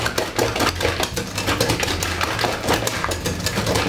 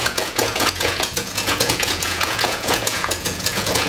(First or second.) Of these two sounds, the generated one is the second